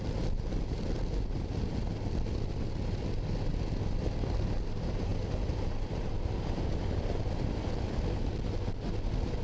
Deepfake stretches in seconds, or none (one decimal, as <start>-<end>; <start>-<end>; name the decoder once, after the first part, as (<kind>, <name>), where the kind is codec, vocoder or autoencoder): none